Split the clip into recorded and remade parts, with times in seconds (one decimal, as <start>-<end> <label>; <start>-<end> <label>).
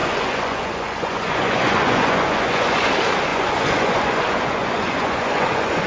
0.0-2.9 remade; 2.9-3.3 recorded; 3.3-5.9 remade